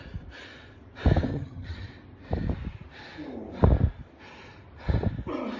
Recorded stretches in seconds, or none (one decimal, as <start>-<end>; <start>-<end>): 0.0-1.3; 1.9-5.6